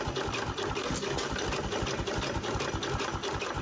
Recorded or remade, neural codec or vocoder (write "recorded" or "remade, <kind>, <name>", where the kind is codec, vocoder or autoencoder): recorded